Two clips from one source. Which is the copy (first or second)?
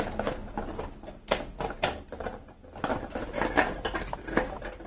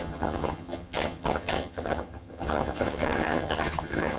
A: second